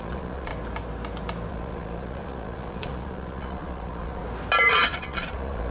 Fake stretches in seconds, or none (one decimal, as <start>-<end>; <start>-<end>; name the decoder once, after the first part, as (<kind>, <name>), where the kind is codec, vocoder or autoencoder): 0.0-0.5 (vocoder, Vocos); 1.5-4.2; 4.7-5.7